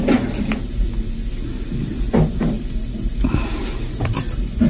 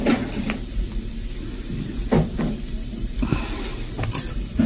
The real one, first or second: first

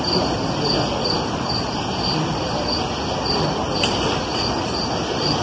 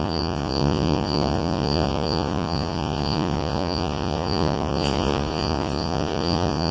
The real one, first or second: first